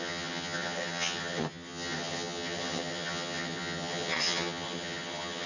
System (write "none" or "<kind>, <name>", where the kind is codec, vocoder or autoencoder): vocoder, HiFi-GAN